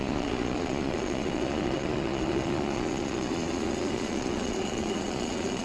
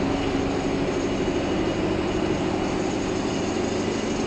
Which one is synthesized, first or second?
first